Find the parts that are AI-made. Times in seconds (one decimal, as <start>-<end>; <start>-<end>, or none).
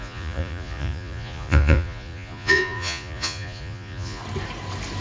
0.0-4.2